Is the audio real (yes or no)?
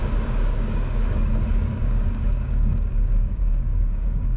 no